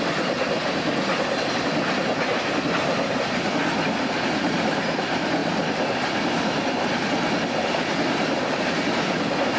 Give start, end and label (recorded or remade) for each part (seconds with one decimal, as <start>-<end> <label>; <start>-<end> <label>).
0.0-9.6 recorded